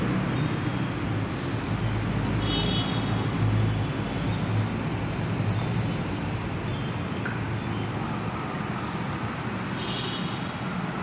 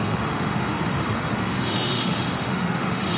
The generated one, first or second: second